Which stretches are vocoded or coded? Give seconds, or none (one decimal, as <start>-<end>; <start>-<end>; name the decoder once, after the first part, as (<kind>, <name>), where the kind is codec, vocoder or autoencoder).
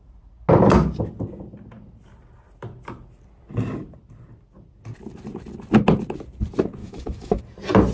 6.8-7.4 (autoencoder, DAC-VAE)